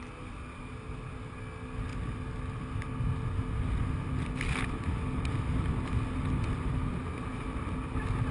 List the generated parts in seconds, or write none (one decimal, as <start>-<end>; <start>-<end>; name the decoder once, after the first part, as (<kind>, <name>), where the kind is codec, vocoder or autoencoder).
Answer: none